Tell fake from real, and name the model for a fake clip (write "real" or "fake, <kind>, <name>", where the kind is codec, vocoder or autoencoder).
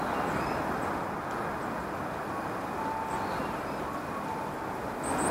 real